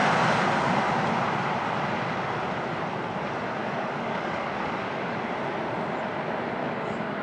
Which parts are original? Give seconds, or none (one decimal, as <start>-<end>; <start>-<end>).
0.0-3.6; 5.2-6.6